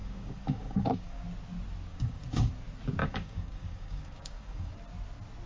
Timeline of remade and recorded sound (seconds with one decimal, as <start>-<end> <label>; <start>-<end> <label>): 0.0-1.2 remade; 1.2-1.9 recorded; 1.9-2.5 remade; 2.5-3.0 recorded; 3.0-4.7 remade; 4.7-5.5 recorded

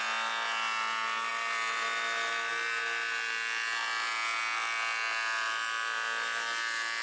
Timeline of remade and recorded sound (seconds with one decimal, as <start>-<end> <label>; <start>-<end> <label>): 0.0-7.0 recorded